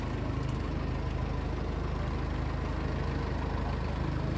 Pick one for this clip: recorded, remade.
recorded